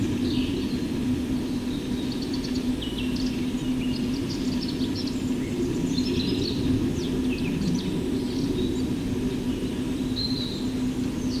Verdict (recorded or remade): recorded